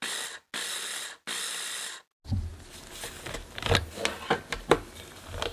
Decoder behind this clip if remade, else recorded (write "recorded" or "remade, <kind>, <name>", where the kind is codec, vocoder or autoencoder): recorded